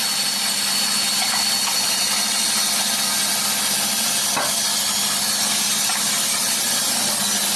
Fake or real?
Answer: real